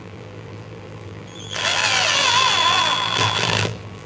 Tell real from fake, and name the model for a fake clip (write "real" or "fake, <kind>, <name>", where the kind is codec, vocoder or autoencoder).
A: fake, vocoder, BigVGAN v2